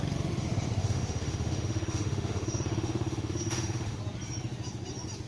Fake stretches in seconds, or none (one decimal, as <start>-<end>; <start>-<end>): 0.8-4.0